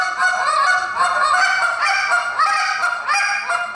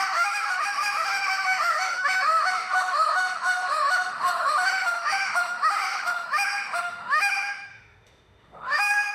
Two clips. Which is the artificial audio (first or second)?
second